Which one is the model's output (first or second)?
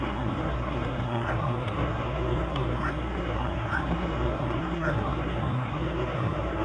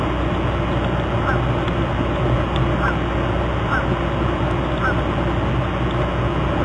first